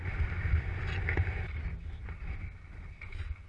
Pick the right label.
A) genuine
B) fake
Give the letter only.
A